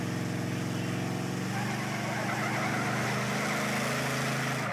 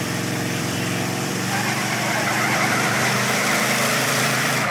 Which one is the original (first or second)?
first